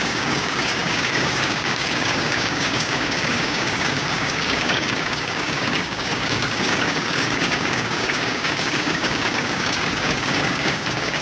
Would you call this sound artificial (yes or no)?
yes